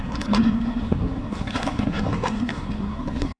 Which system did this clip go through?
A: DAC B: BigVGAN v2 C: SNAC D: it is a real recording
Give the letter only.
C